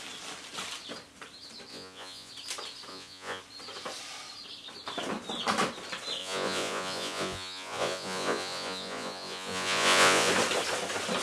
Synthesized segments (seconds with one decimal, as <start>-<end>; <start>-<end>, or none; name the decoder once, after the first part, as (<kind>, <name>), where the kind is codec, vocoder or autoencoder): 1.7-2.3 (vocoder, Vocos); 2.9-3.4; 6.2-10.3